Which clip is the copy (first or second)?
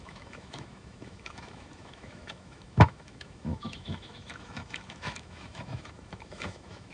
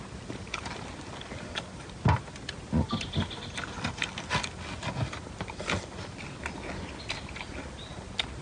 first